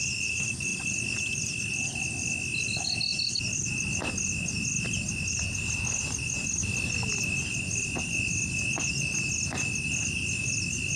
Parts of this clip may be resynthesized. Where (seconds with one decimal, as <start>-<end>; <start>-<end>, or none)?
none

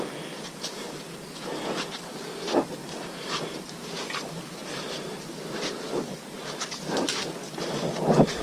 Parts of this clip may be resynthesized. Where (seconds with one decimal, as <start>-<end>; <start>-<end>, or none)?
2.8-3.6; 4.6-6.6